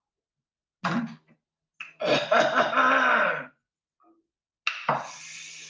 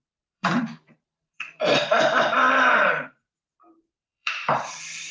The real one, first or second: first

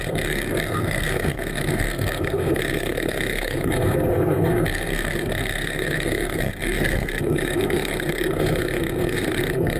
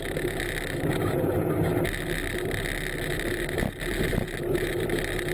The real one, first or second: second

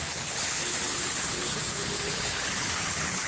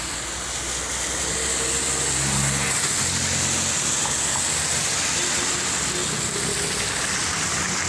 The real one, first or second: second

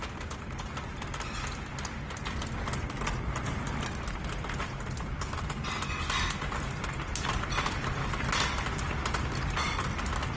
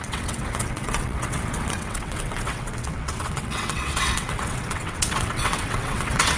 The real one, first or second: first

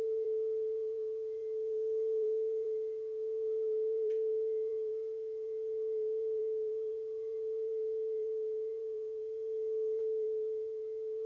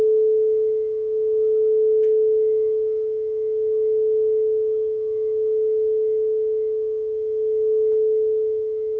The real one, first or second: second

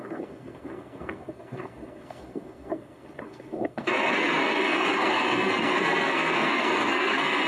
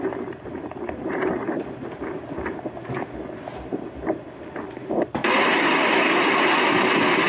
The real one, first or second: second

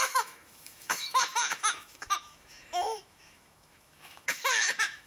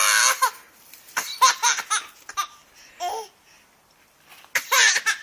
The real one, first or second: second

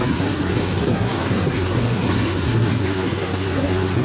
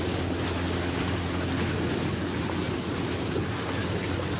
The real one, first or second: second